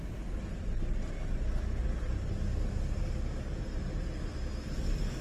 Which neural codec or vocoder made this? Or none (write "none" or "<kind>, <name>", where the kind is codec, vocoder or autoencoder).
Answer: none